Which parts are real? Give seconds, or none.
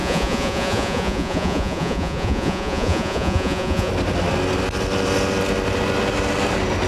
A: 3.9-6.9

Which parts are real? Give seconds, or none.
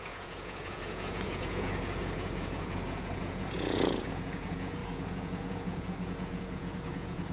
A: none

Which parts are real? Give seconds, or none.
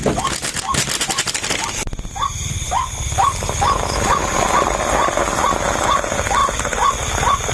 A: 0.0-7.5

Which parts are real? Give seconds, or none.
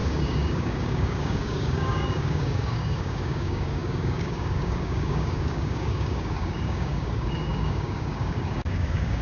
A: none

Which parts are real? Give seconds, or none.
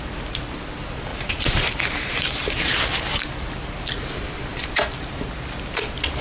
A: 0.0-1.1; 2.8-4.5; 5.2-6.2